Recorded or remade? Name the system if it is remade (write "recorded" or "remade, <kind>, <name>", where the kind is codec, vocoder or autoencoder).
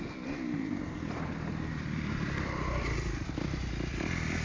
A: remade, vocoder, BigVGAN v2